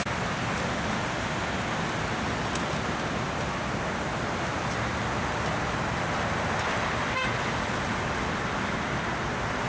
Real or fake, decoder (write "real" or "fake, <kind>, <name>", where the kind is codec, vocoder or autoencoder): real